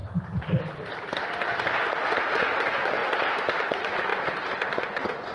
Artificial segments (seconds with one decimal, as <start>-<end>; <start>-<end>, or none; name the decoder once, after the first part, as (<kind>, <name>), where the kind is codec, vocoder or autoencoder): 2.3-3.0 (vocoder, Vocos); 3.6-4.1; 4.7-5.3